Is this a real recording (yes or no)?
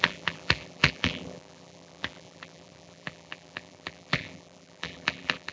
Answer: no